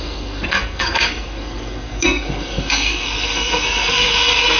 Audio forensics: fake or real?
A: fake